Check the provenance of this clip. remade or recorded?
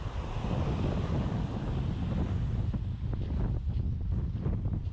recorded